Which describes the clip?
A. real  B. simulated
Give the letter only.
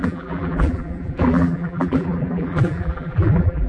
B